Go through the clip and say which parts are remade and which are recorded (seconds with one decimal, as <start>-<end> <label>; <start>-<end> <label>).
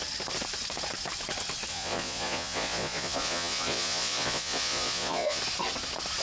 0.0-1.7 recorded; 1.7-5.4 remade; 5.4-6.2 recorded